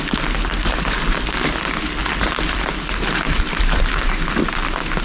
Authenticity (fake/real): real